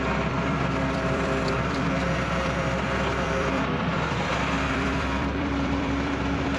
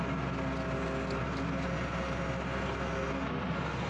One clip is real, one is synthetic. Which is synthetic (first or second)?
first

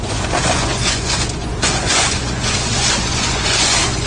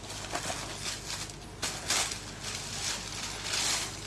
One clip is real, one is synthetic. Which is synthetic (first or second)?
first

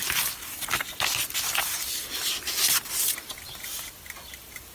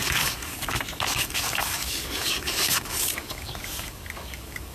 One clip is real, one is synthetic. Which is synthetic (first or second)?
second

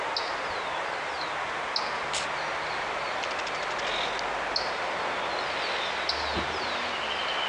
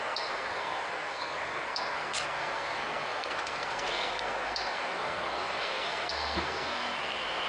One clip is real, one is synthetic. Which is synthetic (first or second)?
second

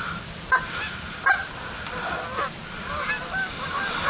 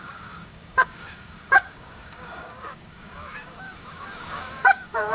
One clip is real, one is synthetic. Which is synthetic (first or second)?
second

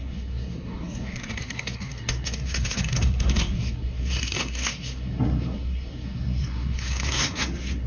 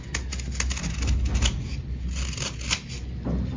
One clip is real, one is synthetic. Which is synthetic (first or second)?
first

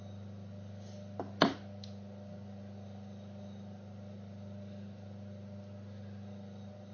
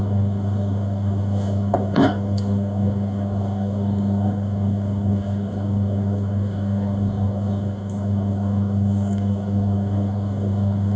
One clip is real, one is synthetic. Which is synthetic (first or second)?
second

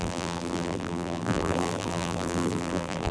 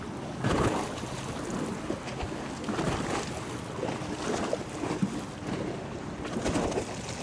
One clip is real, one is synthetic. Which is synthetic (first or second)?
first